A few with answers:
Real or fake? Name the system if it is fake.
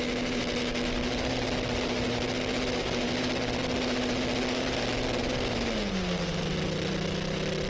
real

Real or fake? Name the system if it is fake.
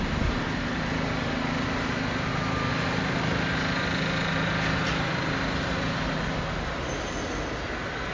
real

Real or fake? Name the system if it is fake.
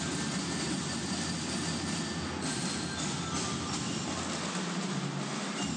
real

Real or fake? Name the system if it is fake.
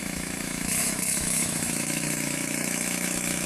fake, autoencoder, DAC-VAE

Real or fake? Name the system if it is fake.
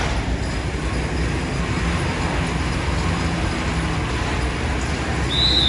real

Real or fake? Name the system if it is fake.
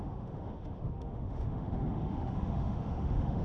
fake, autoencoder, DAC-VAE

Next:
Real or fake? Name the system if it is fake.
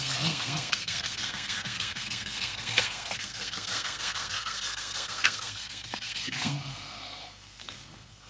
fake, codec, SNAC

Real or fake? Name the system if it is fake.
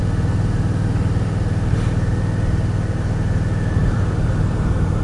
real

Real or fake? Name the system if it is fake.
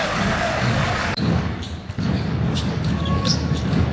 fake, codec, DAC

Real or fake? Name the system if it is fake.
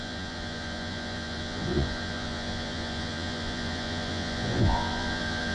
fake, vocoder, Vocos